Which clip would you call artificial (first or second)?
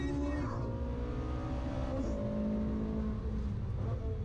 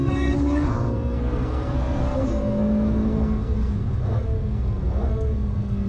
second